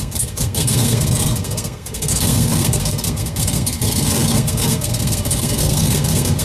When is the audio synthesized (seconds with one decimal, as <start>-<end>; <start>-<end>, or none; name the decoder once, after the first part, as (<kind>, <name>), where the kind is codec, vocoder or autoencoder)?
0.0-6.4 (codec, SNAC)